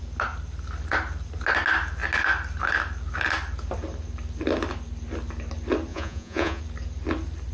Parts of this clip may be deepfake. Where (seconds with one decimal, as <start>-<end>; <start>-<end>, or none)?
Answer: 5.9-6.6